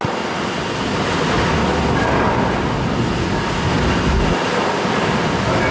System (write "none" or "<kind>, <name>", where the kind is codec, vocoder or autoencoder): none